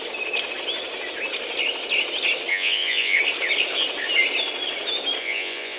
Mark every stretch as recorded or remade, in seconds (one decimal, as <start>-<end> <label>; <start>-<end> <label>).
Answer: 0.0-2.5 recorded; 2.5-3.2 remade; 3.2-5.2 recorded; 5.2-5.8 remade